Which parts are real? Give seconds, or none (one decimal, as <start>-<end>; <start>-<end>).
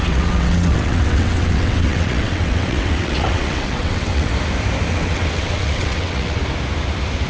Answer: 4.3-4.9; 6.4-7.3